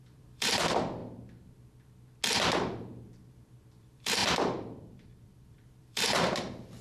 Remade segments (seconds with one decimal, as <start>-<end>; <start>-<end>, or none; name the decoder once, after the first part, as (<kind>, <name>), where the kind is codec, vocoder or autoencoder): 0.0-1.0 (vocoder, BigVGAN v2); 3.8-6.8